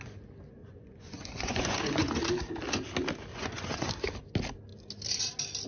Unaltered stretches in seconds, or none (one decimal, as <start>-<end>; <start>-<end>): 0.0-0.6; 2.1-3.3; 3.9-5.7